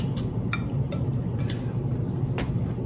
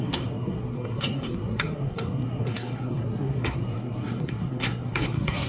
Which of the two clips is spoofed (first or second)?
second